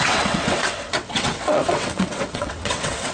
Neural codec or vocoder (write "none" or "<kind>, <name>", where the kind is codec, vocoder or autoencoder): vocoder, WaveNeXt